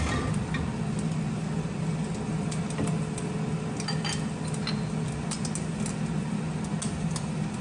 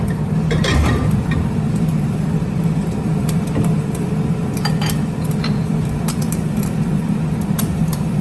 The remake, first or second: second